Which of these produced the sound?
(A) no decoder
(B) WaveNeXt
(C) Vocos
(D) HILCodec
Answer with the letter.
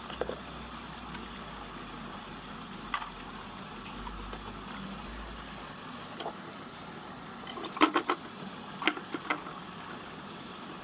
A